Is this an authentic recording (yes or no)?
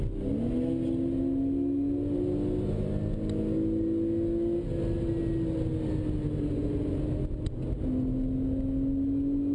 yes